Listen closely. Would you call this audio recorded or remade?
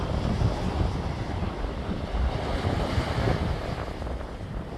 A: recorded